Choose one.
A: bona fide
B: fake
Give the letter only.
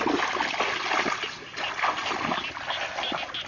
A